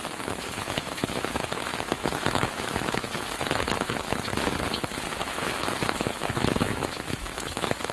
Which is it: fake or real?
fake